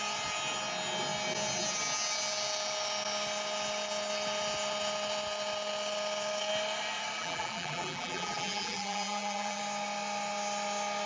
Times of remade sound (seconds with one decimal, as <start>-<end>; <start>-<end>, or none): 7.2-9.6